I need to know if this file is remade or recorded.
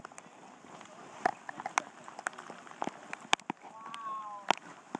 recorded